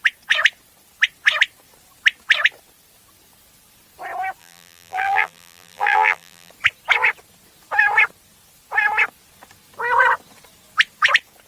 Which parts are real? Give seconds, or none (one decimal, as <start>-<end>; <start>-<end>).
0.0-4.4; 6.5-11.5